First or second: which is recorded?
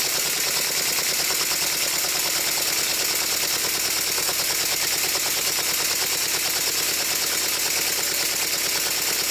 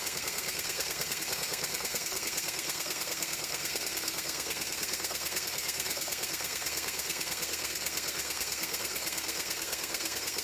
first